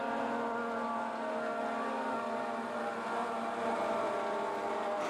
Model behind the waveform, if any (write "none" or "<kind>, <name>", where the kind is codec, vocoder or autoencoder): none